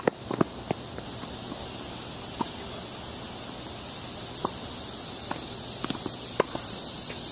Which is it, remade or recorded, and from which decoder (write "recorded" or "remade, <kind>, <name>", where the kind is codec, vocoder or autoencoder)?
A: recorded